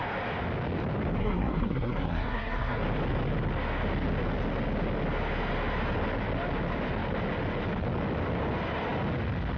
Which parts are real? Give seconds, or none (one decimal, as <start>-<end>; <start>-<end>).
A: 0.0-1.2; 2.8-9.6